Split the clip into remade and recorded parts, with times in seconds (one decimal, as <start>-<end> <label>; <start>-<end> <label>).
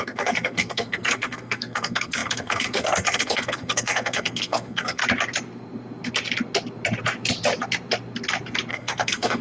0.0-5.0 remade; 5.0-8.7 recorded; 8.7-9.4 remade